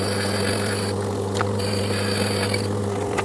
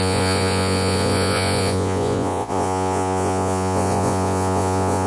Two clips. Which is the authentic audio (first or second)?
first